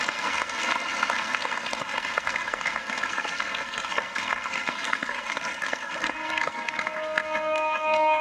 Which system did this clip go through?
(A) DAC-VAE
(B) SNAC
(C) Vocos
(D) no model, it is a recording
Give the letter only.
B